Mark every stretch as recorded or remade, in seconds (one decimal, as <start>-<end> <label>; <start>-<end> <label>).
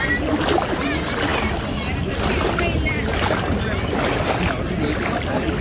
0.0-5.6 recorded